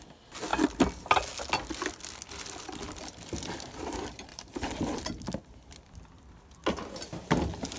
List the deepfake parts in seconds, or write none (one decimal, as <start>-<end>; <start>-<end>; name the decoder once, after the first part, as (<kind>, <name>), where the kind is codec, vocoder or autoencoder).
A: none